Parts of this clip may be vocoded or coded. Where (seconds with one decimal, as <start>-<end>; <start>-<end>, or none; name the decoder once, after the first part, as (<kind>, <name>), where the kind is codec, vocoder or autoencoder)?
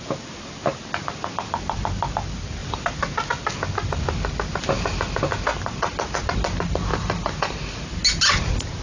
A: none